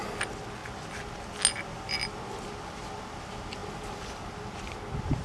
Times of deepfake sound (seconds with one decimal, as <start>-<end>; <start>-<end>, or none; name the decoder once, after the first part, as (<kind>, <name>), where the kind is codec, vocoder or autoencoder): none